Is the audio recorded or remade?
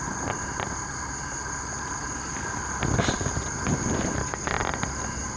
recorded